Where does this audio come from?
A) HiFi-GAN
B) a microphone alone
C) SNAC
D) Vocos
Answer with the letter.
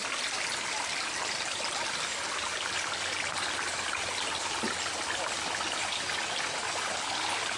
B